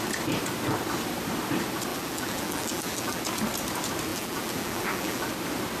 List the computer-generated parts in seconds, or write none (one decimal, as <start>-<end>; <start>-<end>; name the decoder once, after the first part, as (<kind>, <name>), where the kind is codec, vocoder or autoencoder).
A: 1.9-3.2 (vocoder, BigVGAN v2); 4.1-5.3